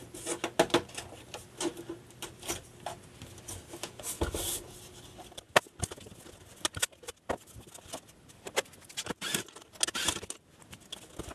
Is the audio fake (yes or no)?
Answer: no